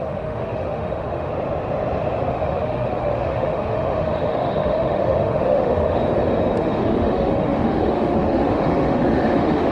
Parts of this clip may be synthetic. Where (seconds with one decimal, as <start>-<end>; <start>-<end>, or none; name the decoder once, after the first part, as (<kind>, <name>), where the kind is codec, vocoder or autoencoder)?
0.0-1.3 (autoencoder, DAC-VAE); 2.3-6.0; 6.6-9.7